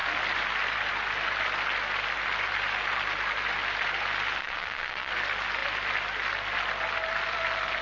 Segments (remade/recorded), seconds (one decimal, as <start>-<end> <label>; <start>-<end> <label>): 0.0-4.4 recorded; 4.4-5.1 remade; 5.1-7.8 recorded